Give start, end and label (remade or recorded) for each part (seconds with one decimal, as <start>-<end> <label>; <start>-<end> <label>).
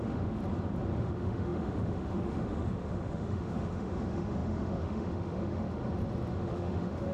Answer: 0.0-0.4 remade; 0.4-1.0 recorded; 1.0-5.8 remade; 5.8-6.3 recorded; 6.3-7.1 remade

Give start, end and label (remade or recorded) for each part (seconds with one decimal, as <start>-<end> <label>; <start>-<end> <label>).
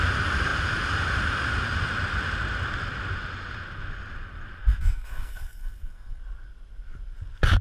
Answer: 0.0-4.6 recorded; 4.6-6.2 remade; 6.2-7.6 recorded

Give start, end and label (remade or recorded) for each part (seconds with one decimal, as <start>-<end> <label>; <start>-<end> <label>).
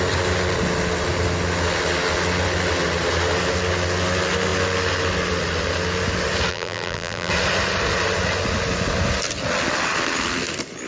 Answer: 0.0-6.5 recorded; 6.5-7.3 remade; 7.3-10.9 recorded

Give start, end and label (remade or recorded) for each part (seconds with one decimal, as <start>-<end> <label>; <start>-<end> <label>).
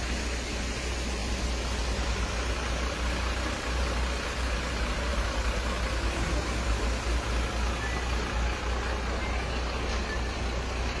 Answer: 0.0-11.0 recorded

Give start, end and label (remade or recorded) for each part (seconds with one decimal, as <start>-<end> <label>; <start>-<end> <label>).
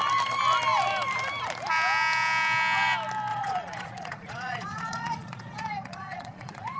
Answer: 0.0-3.3 recorded; 3.3-6.8 remade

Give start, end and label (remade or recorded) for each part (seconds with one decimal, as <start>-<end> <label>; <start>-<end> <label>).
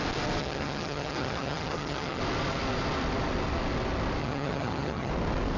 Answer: 0.0-0.4 recorded; 0.4-2.2 remade; 2.2-4.2 recorded; 4.2-5.1 remade; 5.1-5.6 recorded